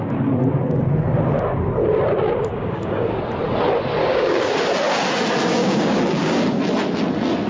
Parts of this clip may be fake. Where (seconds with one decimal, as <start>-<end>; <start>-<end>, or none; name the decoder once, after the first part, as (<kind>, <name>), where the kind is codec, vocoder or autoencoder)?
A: 2.5-3.2 (codec, DAC); 4.0-4.6; 5.6-6.6

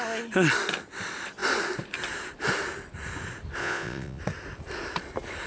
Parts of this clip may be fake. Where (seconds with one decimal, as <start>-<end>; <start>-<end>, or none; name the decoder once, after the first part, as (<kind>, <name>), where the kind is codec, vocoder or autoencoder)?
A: 3.6-4.2 (vocoder, Vocos)

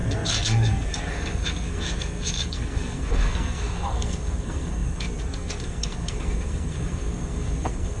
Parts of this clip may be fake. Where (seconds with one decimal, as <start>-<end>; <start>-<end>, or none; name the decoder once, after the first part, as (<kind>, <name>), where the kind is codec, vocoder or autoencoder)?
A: 0.0-8.0 (codec, SNAC)